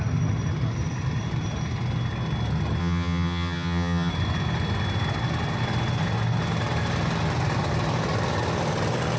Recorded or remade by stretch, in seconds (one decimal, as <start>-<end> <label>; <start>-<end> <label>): 0.0-2.8 recorded; 2.8-4.1 remade; 4.1-9.2 recorded